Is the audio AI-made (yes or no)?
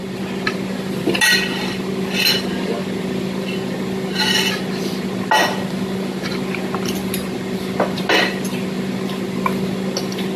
no